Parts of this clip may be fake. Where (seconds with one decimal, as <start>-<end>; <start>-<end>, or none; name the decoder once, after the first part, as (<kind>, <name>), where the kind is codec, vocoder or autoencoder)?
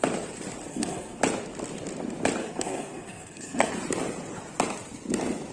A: 0.7-1.2 (codec, SNAC); 2.4-3.7